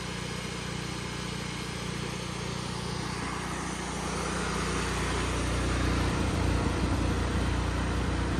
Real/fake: real